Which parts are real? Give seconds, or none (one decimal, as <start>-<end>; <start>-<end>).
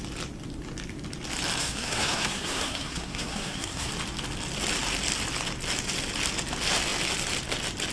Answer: 0.0-1.6; 3.9-7.9